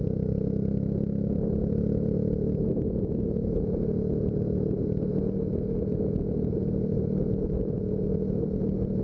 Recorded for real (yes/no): yes